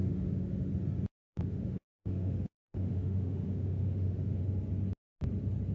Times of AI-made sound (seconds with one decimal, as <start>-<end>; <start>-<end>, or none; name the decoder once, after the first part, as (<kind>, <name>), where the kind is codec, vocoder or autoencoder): 0.0-0.7 (autoencoder, DAC-VAE); 1.2-4.4